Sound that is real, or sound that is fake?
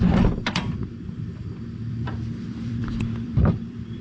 fake